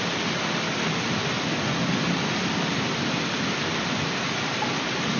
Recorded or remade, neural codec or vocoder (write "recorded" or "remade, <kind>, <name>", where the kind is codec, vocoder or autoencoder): recorded